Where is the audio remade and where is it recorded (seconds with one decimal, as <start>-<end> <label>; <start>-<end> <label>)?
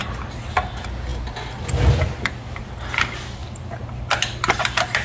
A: 0.0-3.4 recorded; 3.4-4.0 remade; 4.0-5.0 recorded